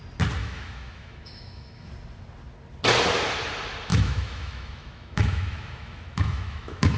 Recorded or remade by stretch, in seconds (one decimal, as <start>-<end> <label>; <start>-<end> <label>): 0.0-0.4 recorded; 0.4-1.9 remade; 1.9-3.9 recorded; 3.9-7.0 remade